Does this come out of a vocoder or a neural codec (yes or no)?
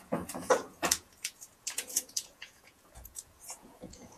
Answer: yes